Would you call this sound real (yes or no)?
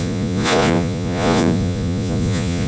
no